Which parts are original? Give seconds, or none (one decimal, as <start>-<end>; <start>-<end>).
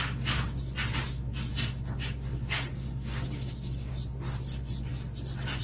0.0-2.7; 3.9-5.6